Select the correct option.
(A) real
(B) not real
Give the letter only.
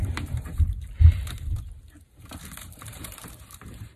B